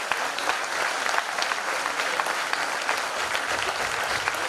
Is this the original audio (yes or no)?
yes